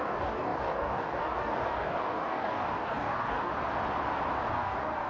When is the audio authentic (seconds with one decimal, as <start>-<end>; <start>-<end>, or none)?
3.5-4.5